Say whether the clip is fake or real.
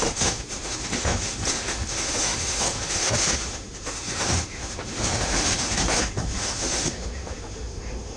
fake